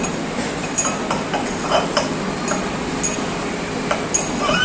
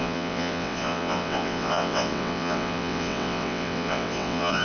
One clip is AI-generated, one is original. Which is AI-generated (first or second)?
second